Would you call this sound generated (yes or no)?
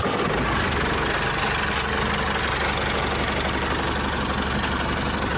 no